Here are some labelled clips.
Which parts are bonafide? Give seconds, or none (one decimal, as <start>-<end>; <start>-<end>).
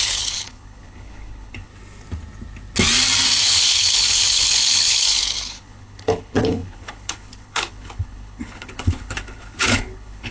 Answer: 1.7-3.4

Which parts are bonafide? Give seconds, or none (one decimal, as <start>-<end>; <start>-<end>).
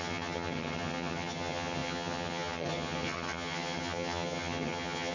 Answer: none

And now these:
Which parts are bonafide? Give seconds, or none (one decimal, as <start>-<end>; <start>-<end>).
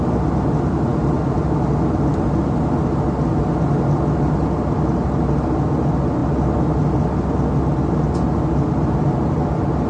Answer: 0.0-9.9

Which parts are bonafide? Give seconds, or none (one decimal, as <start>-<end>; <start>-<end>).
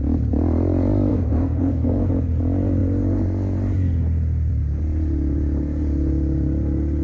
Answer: 0.0-1.1; 2.1-7.0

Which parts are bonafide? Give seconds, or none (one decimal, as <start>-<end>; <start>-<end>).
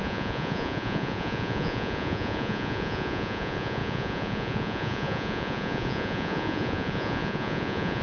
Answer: none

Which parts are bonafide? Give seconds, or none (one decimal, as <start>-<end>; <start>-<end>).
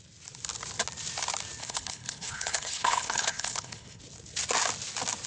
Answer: 0.0-1.6; 4.0-5.3